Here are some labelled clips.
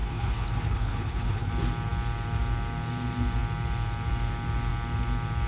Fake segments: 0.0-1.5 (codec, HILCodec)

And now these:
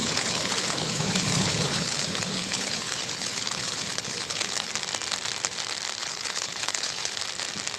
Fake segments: 0.0-4.7 (codec, HILCodec); 6.0-7.2

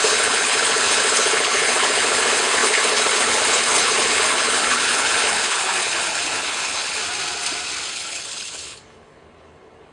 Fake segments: 0.0-7.0 (codec, HILCodec); 7.9-9.9

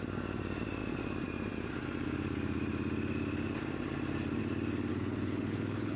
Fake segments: 4.9-6.0 (codec, HILCodec)